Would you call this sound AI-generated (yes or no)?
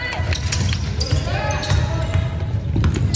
no